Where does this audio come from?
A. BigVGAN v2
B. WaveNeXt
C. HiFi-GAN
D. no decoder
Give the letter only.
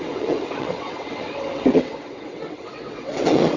B